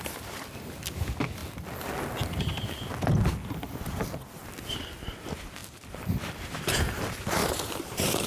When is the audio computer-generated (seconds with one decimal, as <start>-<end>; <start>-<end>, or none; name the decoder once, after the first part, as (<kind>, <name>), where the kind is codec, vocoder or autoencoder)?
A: 7.4-8.3 (vocoder, BigVGAN v2)